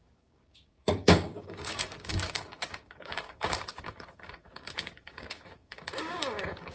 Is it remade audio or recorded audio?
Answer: remade